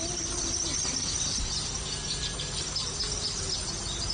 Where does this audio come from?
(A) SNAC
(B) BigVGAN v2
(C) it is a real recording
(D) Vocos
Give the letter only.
C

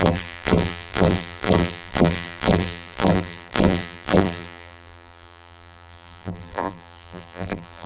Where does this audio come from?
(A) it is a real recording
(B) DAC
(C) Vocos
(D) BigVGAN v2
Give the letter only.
D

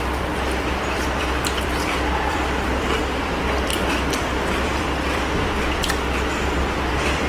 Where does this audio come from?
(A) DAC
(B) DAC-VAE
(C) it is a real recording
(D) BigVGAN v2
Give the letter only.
D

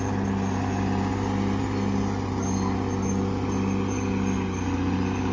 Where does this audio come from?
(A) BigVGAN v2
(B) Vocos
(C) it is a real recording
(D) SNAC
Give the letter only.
C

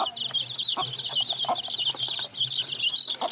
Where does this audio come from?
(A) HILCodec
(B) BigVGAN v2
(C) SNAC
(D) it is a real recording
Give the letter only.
D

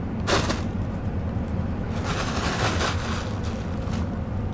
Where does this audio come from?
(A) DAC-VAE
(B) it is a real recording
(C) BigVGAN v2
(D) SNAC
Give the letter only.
B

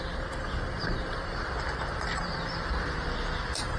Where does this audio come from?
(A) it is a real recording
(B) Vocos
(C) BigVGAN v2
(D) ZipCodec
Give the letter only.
C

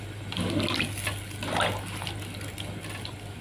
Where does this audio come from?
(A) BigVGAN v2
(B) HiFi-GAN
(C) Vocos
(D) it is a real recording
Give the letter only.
D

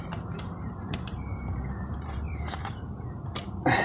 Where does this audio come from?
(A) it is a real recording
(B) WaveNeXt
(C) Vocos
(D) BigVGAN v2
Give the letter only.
D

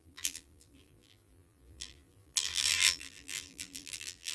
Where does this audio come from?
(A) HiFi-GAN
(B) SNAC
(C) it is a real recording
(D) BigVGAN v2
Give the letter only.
D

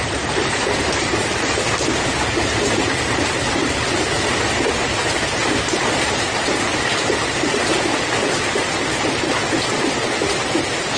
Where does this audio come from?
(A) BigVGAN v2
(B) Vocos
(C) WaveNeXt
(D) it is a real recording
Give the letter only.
A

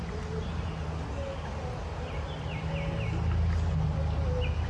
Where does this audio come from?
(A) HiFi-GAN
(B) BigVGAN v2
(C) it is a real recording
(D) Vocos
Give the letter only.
C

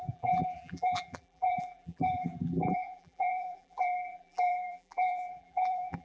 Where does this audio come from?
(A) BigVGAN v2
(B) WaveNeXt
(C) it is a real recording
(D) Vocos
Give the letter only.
A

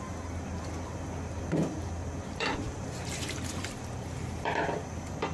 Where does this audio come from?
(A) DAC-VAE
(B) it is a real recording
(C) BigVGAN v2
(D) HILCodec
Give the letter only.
C